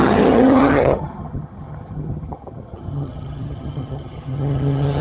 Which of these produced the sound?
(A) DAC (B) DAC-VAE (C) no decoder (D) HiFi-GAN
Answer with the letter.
D